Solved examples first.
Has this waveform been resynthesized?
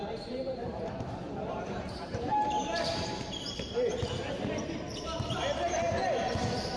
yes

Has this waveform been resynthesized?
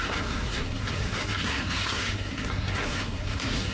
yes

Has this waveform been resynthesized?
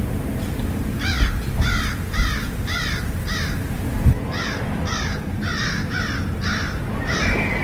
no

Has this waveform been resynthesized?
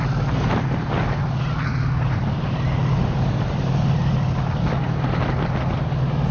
no